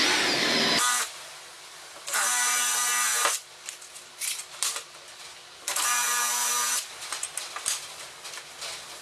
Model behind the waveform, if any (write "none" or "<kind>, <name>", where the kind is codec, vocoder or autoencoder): none